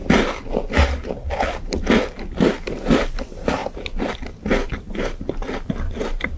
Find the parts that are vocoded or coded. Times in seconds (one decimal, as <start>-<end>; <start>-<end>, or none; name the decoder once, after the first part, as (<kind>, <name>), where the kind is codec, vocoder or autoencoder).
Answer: none